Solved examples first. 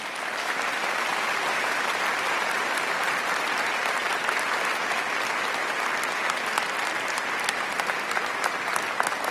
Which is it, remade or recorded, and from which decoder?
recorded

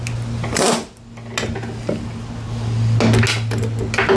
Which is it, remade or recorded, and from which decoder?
recorded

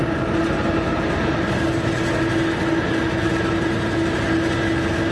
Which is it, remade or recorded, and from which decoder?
recorded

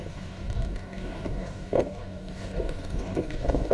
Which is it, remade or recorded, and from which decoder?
remade, codec, DAC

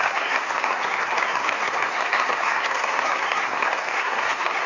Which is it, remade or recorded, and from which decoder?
remade, codec, SNAC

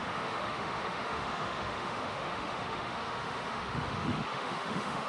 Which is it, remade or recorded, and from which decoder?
remade, autoencoder, DAC-VAE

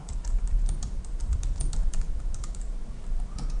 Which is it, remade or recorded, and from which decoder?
remade, vocoder, BigVGAN v2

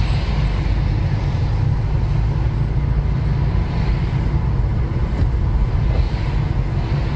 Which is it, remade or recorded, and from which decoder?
recorded